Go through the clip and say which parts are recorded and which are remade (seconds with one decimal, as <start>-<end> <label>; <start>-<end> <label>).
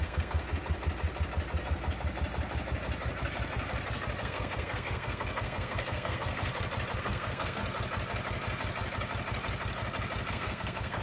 0.0-0.4 remade; 0.4-4.2 recorded; 4.2-6.5 remade; 6.5-7.0 recorded; 7.0-7.6 remade; 7.6-10.3 recorded; 10.3-11.0 remade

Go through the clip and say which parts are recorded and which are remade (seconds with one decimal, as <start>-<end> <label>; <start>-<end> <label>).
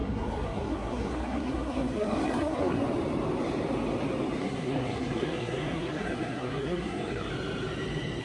0.0-2.8 remade; 2.8-4.4 recorded; 4.4-7.3 remade; 7.3-8.2 recorded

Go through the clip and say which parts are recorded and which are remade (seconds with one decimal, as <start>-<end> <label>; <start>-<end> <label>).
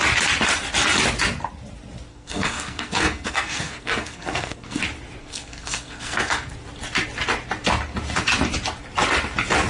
0.0-2.1 recorded; 2.1-4.8 remade; 4.8-5.2 recorded; 5.2-6.5 remade; 6.5-9.7 recorded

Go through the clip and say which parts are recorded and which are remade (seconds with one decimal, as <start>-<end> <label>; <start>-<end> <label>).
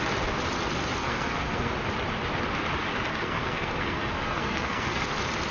0.0-1.0 recorded; 1.0-1.7 remade; 1.7-3.1 recorded; 3.1-5.0 remade; 5.0-5.5 recorded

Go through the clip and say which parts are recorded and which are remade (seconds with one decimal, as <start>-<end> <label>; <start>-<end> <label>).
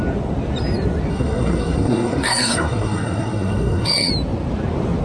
0.0-1.1 recorded; 1.1-4.1 remade; 4.1-5.0 recorded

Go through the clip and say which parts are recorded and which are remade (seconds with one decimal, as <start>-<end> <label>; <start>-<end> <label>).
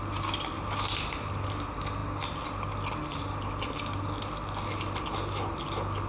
0.0-6.1 recorded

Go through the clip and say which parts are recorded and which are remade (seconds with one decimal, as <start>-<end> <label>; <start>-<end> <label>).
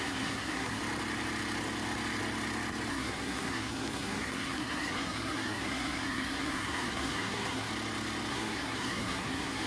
0.0-0.8 remade; 0.8-2.9 recorded; 2.9-7.7 remade; 7.7-8.3 recorded; 8.3-9.7 remade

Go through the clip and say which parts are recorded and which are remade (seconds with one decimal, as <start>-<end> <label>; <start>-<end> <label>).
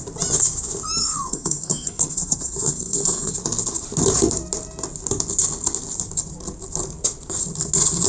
0.0-1.0 recorded; 1.0-3.3 remade; 3.3-8.1 recorded